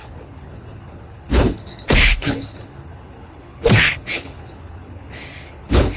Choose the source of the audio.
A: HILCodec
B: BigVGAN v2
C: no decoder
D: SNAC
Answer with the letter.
A